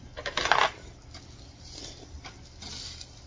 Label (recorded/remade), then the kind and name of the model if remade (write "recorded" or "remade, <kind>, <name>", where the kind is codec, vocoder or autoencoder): recorded